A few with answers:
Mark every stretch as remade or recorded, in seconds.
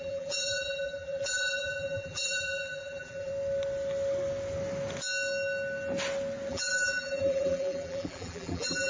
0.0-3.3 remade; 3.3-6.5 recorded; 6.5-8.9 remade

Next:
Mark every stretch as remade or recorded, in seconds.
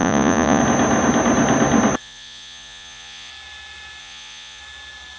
0.0-0.6 remade; 0.6-2.0 recorded; 2.0-3.3 remade; 3.3-4.0 recorded; 4.0-4.6 remade; 4.6-5.2 recorded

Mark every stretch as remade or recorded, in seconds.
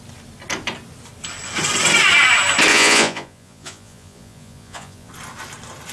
0.0-2.7 recorded; 2.7-5.1 remade; 5.1-5.9 recorded